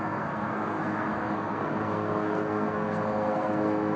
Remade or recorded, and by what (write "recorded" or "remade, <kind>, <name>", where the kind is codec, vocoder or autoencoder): remade, codec, SNAC